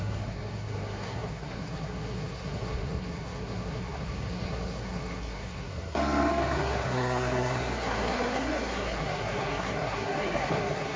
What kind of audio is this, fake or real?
fake